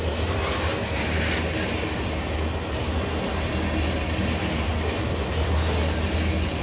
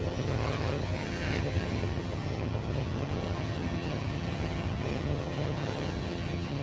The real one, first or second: first